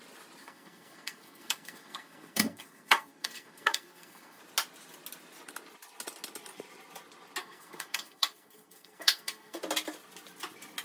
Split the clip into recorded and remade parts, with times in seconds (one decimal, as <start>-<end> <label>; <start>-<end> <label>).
0.0-0.4 recorded; 0.4-4.4 remade; 4.4-7.4 recorded; 7.4-9.6 remade; 9.6-10.8 recorded